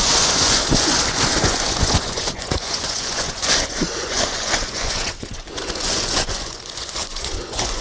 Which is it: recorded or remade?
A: remade